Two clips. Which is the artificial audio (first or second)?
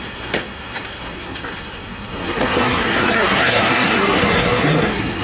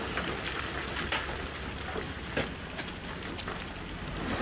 first